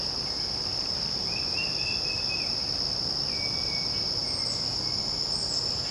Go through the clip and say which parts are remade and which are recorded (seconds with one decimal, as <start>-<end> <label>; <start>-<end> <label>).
0.0-5.9 recorded